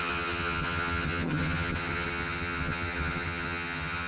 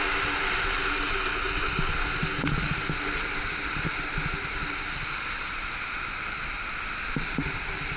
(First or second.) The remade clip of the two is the first